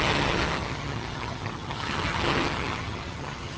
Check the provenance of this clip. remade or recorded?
remade